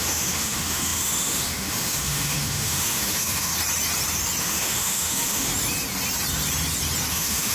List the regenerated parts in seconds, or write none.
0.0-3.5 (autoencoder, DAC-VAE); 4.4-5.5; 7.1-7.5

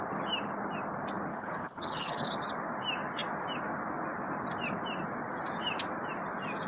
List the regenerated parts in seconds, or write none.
1.3-2.3 (codec, HILCodec)

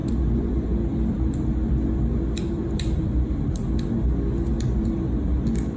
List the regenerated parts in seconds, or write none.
0.0-3.5 (vocoder, BigVGAN v2)